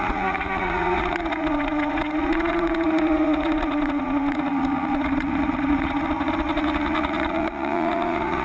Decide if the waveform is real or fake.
fake